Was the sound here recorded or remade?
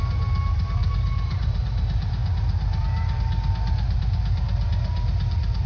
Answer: recorded